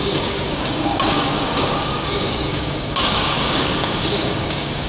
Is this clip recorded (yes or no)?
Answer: no